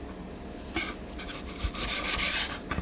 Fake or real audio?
real